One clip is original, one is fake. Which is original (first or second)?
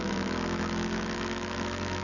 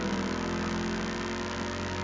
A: second